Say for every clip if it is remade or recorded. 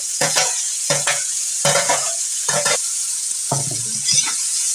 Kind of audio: remade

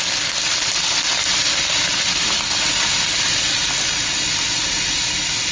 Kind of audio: recorded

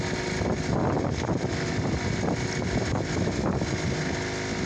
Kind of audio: recorded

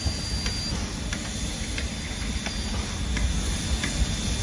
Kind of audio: recorded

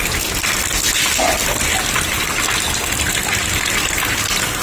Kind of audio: recorded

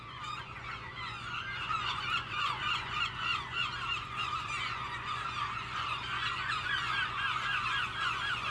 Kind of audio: remade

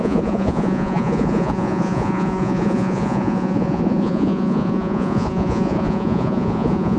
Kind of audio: remade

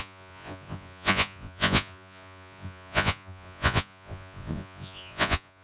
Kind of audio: remade